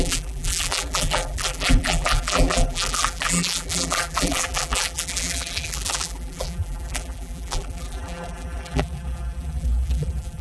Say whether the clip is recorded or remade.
remade